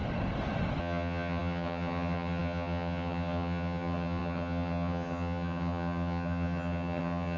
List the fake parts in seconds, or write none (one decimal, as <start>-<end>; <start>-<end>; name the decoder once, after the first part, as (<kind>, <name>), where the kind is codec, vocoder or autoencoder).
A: 0.8-7.4 (vocoder, HiFi-GAN)